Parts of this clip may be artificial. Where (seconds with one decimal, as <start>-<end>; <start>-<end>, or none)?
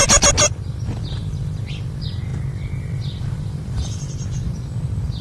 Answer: none